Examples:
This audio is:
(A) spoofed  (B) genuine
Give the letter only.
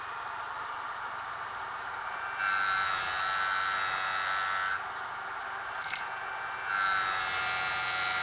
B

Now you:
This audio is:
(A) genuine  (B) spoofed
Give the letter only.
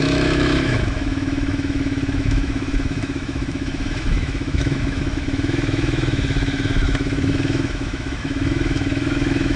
B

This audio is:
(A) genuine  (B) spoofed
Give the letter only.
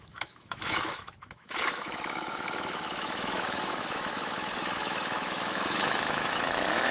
B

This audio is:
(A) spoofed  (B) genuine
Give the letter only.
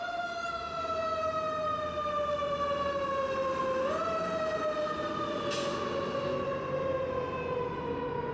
B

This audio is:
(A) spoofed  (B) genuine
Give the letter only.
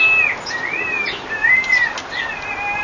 B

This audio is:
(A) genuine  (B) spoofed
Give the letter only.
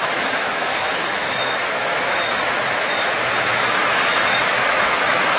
B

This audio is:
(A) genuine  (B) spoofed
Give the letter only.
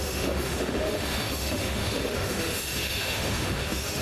B